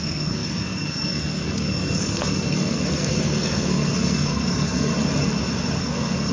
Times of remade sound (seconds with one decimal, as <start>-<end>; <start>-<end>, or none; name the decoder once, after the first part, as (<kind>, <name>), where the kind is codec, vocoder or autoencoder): 0.0-4.9 (codec, SNAC); 5.8-6.3